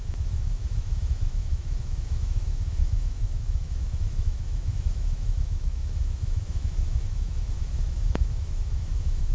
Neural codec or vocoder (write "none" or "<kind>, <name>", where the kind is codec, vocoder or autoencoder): autoencoder, DAC-VAE